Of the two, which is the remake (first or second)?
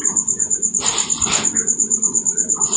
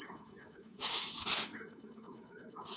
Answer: second